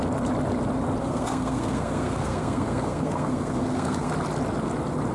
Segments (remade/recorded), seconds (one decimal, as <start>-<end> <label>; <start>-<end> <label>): 0.0-1.0 recorded; 1.0-4.1 remade; 4.1-5.1 recorded